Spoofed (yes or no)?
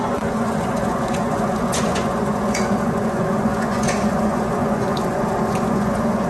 yes